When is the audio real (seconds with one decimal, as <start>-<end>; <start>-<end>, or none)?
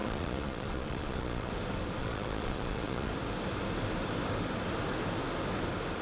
1.5-2.0; 3.1-6.0